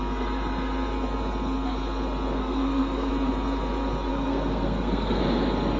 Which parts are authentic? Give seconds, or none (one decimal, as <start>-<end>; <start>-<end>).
0.0-2.4; 3.1-4.1; 5.2-5.8